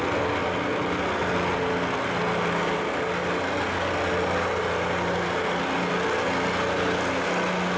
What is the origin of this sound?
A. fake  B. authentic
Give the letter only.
B